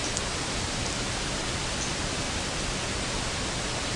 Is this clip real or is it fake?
real